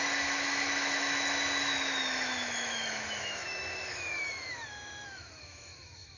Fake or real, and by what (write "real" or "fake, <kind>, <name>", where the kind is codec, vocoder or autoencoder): fake, autoencoder, DAC-VAE